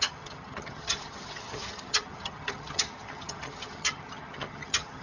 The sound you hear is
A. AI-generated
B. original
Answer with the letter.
A